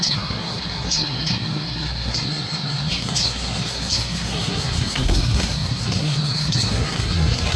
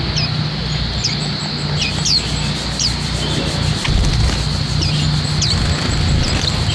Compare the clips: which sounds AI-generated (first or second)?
first